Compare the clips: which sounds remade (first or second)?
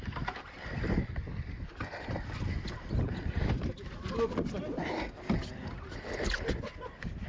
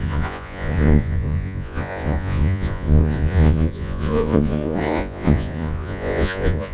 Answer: second